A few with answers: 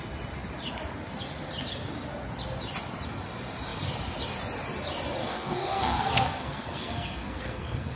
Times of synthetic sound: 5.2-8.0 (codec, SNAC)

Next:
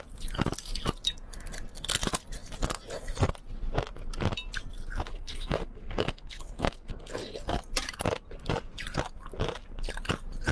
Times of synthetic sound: 5.1-7.1 (codec, SNAC)

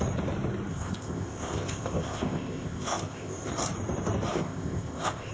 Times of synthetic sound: 0.7-3.5 (codec, ZipCodec); 4.3-5.3

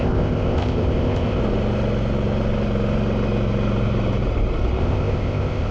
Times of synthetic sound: 0.0-1.4 (codec, ZipCodec); 4.8-5.7